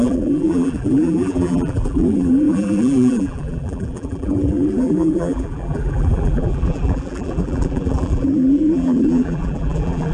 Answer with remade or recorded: remade